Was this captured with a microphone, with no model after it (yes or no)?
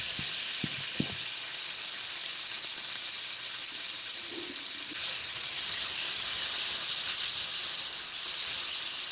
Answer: yes